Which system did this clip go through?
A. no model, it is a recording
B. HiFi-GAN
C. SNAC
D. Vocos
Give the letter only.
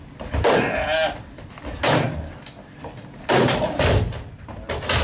A